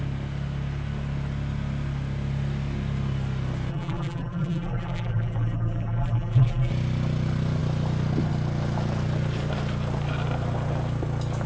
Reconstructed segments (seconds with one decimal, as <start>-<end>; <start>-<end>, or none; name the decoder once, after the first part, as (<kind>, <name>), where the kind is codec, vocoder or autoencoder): 3.7-6.7 (vocoder, BigVGAN v2)